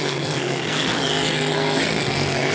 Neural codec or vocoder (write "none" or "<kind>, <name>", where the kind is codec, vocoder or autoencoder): codec, SNAC